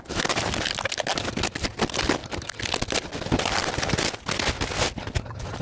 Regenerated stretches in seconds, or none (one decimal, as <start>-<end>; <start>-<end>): none